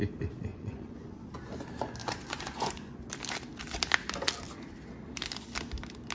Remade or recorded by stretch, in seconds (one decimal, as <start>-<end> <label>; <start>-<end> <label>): 0.0-0.5 recorded; 0.5-1.2 remade; 1.2-2.0 recorded; 2.0-3.0 remade; 3.0-6.1 recorded